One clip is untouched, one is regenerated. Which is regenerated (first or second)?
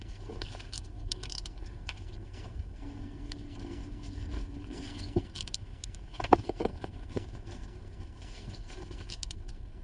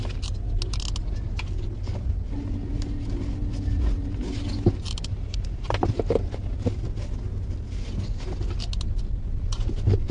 first